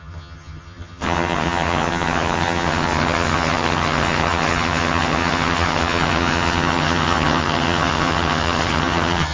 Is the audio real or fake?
fake